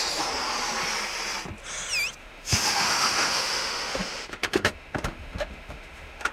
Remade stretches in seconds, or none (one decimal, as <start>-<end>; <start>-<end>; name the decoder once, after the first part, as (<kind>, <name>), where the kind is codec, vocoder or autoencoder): 2.2-6.3 (autoencoder, DAC-VAE)